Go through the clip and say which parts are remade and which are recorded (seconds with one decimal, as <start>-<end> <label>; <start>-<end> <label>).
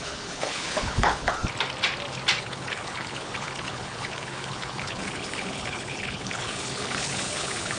0.0-1.4 remade; 1.4-2.4 recorded; 2.4-7.8 remade